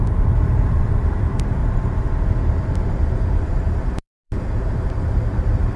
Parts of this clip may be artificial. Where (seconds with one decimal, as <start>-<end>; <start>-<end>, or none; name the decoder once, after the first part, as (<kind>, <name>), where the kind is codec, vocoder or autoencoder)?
0.0-5.8 (vocoder, BigVGAN v2)